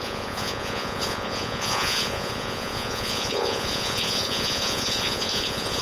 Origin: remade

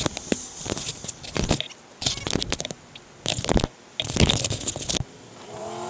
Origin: recorded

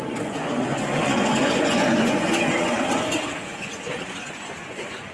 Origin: remade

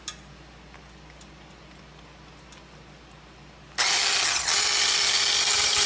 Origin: recorded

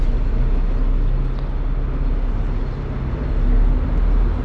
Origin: recorded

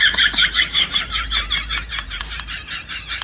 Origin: remade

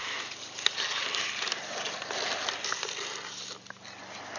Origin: recorded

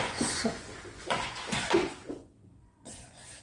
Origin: remade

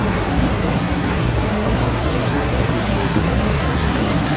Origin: remade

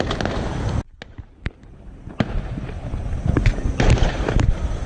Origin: recorded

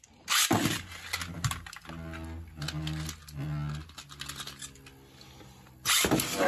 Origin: recorded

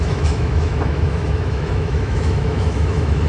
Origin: remade